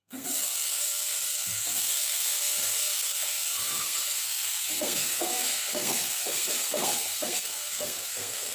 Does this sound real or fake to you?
fake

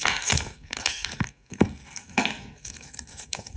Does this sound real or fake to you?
fake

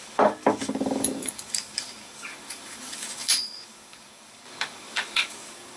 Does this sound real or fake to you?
fake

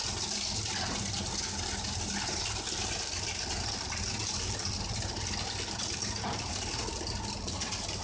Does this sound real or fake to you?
real